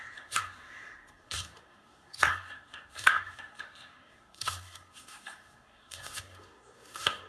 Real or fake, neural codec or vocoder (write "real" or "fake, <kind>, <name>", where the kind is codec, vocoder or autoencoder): fake, codec, SNAC